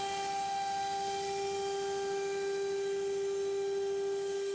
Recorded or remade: recorded